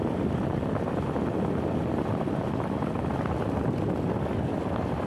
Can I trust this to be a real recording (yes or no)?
yes